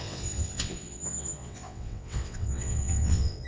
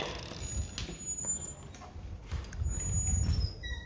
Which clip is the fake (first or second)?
first